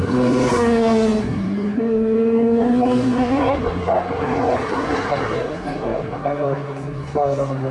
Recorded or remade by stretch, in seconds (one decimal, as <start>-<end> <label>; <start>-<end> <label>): 0.0-7.7 remade